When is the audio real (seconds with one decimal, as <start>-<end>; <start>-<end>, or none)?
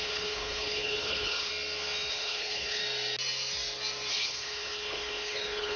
1.5-2.1; 2.8-4.1